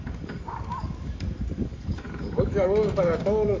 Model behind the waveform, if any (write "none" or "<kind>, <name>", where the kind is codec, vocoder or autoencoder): codec, DAC